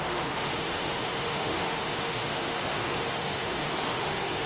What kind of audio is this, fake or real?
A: fake